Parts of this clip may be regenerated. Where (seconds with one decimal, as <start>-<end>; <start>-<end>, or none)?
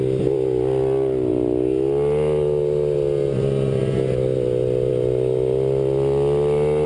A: none